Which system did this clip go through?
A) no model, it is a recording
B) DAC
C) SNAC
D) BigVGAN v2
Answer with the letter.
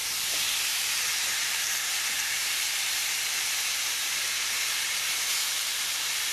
D